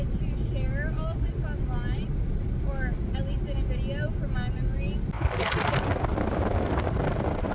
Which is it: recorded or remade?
recorded